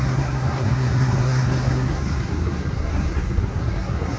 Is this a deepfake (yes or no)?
yes